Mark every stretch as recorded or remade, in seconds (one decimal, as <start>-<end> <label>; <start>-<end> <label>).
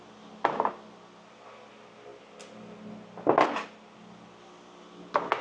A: 0.0-5.4 recorded